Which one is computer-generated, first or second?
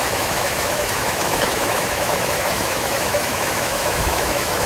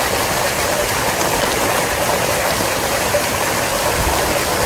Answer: first